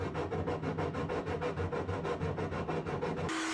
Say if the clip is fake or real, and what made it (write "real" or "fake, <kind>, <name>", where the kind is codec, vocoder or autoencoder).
real